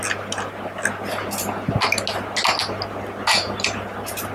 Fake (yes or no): no